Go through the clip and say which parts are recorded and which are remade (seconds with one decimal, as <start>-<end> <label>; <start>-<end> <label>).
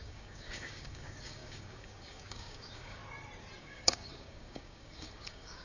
0.0-3.0 remade; 3.0-3.6 recorded; 3.6-5.6 remade